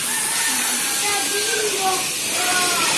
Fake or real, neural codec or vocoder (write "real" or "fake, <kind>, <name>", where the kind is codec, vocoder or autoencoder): real